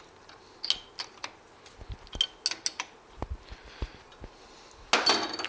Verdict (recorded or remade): recorded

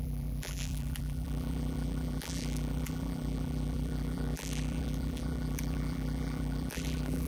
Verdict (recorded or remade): remade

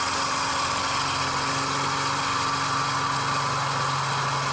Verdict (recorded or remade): recorded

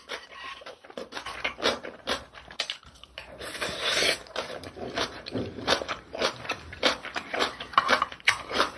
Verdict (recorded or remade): remade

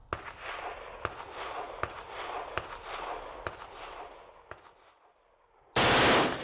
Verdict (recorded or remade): recorded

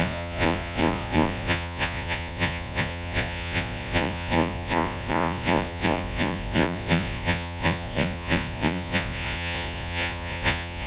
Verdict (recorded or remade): remade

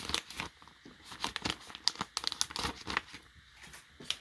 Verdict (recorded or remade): recorded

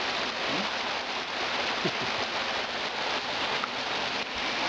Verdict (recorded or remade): recorded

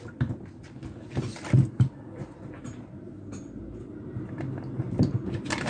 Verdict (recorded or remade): recorded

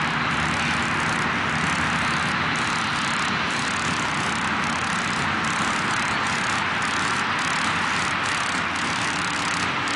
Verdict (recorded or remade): recorded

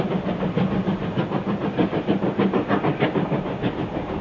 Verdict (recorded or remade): recorded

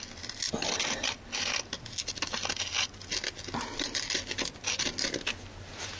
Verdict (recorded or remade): recorded